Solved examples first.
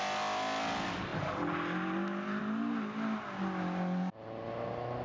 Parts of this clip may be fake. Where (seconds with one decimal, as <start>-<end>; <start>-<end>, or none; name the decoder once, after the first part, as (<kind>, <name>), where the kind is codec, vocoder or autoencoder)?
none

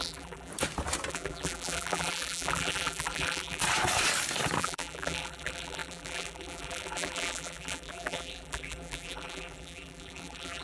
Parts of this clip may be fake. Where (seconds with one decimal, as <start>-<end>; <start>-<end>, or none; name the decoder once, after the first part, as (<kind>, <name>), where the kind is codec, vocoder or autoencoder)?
0.0-0.5 (vocoder, BigVGAN v2); 1.1-3.6; 4.6-10.6

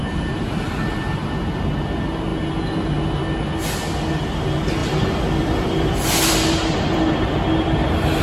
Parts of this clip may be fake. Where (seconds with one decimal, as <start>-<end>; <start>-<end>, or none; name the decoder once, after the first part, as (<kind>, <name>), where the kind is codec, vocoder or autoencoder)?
4.8-7.2 (vocoder, BigVGAN v2)